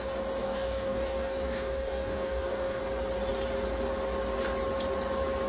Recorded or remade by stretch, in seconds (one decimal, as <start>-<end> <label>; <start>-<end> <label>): 0.0-0.4 recorded; 0.4-2.8 remade; 2.8-5.5 recorded